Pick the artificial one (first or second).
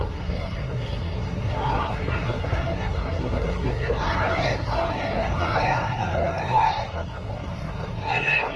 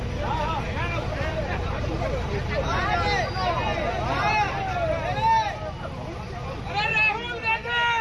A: first